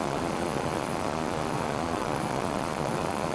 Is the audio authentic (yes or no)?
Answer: no